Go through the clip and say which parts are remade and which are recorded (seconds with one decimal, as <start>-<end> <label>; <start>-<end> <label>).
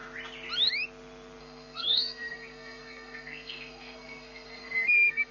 0.0-1.4 recorded; 1.4-5.3 remade